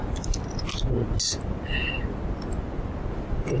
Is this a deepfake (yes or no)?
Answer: no